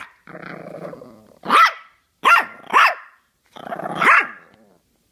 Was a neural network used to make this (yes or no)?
no